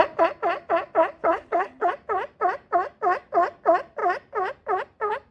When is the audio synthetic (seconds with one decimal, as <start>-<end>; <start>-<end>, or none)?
1.2-1.9